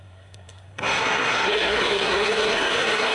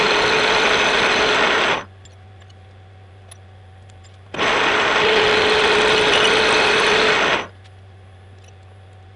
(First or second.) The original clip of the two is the second